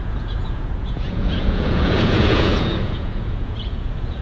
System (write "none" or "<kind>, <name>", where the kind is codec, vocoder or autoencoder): vocoder, Vocos